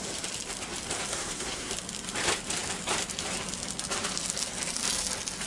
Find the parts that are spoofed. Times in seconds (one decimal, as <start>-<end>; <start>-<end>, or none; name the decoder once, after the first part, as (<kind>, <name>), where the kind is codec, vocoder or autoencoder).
1.1-1.7 (codec, SNAC)